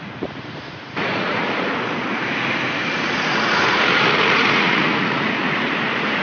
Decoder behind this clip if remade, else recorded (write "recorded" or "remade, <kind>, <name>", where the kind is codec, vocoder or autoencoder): remade, vocoder, Vocos